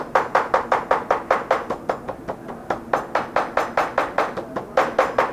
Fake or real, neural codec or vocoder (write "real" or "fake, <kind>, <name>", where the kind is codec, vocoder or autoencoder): real